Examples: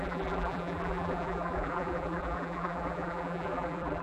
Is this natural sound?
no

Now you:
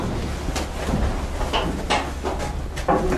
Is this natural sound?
yes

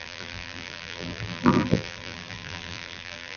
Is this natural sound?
no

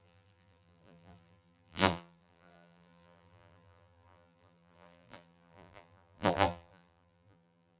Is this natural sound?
no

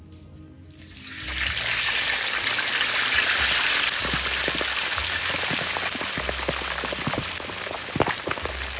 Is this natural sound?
yes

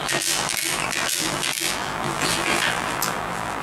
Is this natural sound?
no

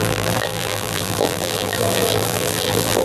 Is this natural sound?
no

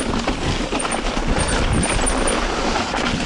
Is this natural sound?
yes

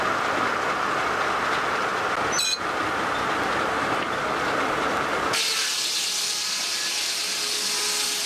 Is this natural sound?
yes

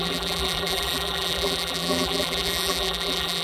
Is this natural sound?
no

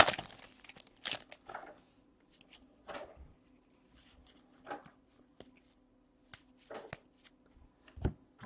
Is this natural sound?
yes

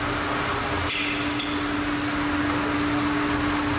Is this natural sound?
yes